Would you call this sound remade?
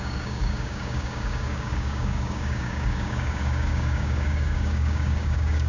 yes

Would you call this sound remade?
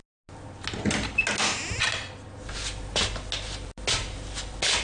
no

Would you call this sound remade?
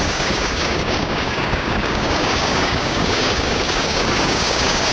yes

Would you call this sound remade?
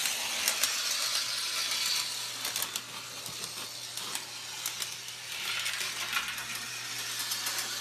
no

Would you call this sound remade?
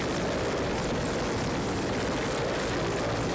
no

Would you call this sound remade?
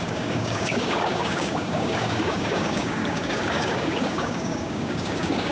yes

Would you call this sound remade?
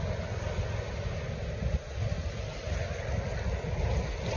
no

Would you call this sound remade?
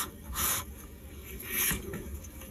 yes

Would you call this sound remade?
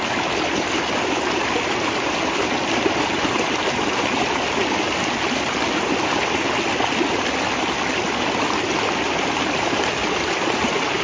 no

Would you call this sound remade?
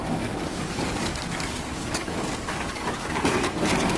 yes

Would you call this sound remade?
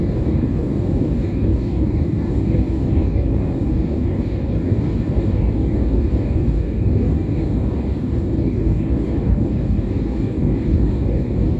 yes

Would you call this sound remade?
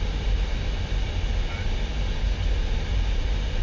no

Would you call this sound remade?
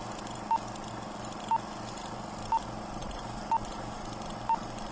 no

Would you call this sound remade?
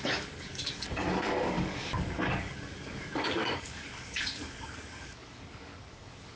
yes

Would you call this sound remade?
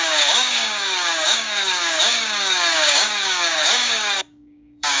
yes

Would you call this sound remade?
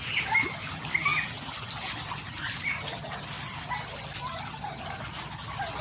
no